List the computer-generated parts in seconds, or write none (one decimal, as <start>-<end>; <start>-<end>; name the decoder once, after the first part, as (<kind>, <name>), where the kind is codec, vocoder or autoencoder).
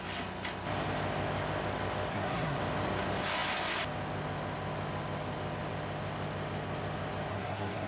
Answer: 2.1-2.6 (codec, SNAC); 7.3-7.9